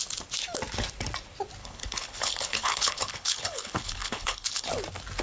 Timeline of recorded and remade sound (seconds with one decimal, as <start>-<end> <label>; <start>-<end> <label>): 0.0-1.6 recorded; 1.6-4.7 remade; 4.7-5.2 recorded